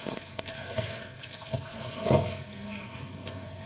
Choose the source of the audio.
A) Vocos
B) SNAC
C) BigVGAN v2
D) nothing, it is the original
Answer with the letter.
B